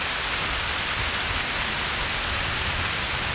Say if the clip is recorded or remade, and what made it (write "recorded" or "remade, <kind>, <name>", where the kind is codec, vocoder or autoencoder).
recorded